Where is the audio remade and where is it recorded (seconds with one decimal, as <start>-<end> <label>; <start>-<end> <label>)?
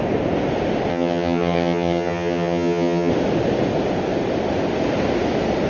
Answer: 0.0-0.9 recorded; 0.9-3.1 remade; 3.1-5.7 recorded